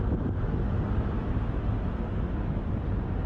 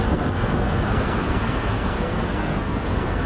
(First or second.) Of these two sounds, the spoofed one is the second